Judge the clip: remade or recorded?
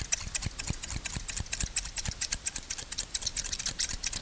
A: recorded